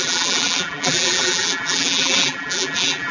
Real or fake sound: fake